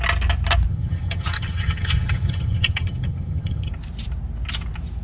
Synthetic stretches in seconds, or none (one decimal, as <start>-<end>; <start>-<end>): 0.7-3.7